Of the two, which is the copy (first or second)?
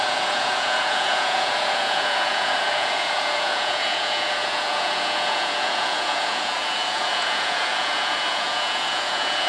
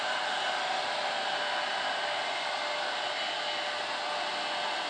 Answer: first